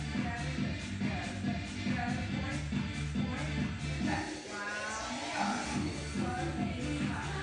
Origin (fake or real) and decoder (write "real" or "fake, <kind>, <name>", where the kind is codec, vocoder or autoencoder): real